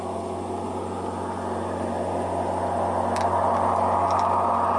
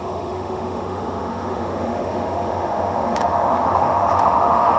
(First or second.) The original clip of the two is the first